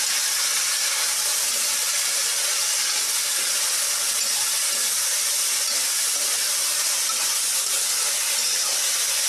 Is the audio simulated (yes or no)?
no